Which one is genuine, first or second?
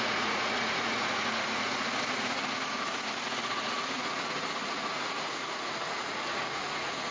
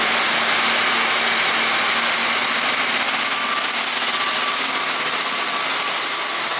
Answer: second